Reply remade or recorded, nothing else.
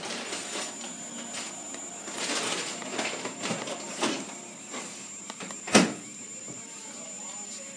recorded